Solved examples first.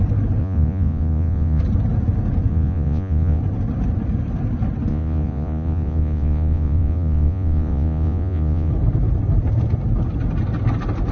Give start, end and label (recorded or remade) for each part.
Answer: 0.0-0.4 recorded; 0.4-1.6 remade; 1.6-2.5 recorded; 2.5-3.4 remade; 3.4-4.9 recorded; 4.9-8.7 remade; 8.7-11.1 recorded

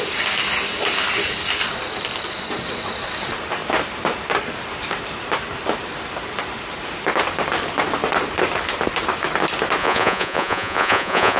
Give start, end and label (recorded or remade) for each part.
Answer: 0.0-9.8 recorded; 9.8-11.4 remade

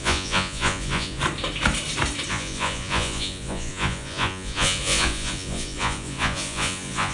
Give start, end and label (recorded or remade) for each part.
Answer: 0.0-1.2 remade; 1.2-2.3 recorded; 2.3-7.1 remade

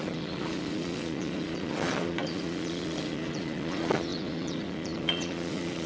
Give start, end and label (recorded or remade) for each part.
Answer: 0.0-5.9 remade

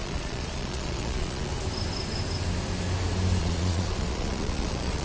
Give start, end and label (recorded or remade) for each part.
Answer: 0.0-1.5 remade; 1.5-3.4 recorded; 3.4-5.0 remade